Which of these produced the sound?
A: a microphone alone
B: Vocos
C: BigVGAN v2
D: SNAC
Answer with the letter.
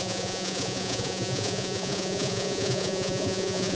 B